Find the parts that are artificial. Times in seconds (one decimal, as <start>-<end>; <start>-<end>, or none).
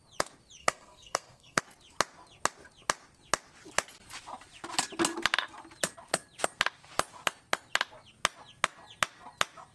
0.6-1.6